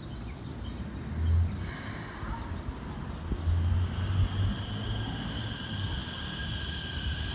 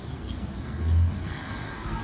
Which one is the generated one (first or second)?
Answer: second